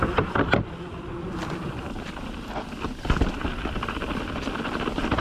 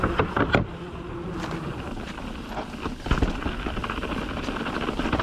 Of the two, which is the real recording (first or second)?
second